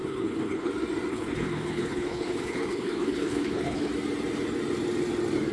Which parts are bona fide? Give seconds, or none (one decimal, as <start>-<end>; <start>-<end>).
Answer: 0.7-1.1; 3.9-5.5